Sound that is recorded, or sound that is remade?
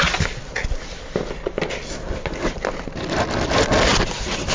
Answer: recorded